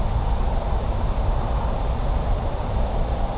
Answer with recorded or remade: recorded